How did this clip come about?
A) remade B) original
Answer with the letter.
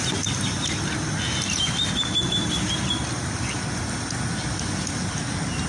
B